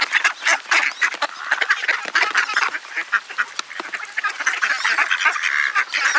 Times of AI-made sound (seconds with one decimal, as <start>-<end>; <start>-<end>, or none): 2.0-3.3